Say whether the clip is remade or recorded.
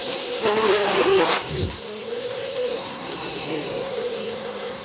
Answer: remade